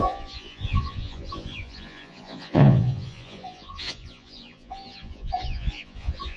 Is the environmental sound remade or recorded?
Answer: remade